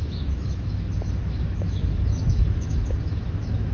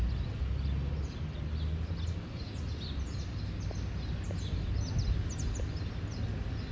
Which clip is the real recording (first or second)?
second